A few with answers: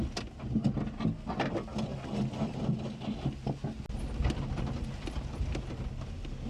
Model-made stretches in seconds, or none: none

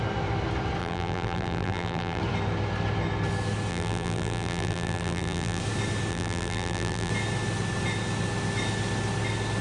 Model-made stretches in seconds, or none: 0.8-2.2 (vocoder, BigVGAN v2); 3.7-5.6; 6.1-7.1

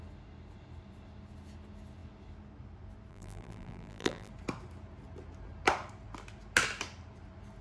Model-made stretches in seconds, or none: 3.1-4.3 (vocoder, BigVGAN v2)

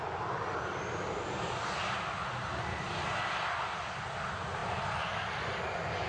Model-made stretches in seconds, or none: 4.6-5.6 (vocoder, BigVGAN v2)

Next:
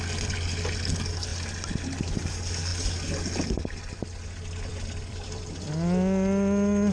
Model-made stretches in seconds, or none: 4.7-5.7 (vocoder, BigVGAN v2)